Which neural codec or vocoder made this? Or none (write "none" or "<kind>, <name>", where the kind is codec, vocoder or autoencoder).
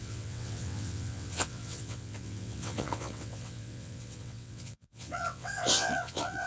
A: vocoder, WaveNeXt